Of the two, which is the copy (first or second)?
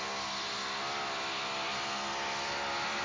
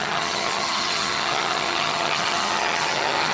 second